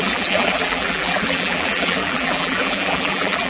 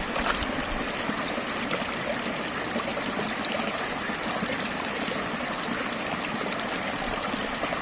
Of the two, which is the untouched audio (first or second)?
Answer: second